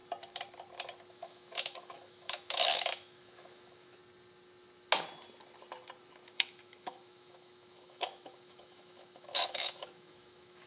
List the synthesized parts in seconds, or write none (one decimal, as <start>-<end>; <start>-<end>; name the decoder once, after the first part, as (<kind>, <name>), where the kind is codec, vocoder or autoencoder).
1.1-4.0 (autoencoder, DAC-VAE); 6.3-10.7

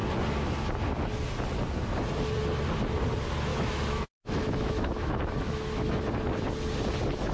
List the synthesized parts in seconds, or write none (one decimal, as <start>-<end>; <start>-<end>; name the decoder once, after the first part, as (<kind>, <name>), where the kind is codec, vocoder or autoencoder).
3.5-6.1 (autoencoder, DAC-VAE)